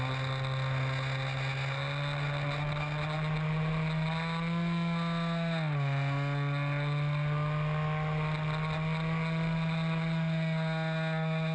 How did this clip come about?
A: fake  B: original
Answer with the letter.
B